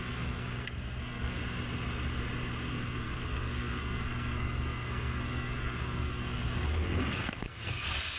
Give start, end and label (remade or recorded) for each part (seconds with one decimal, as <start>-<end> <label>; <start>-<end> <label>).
0.0-1.4 remade; 1.4-2.7 recorded; 2.7-8.2 remade